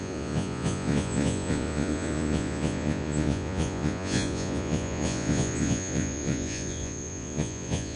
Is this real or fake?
fake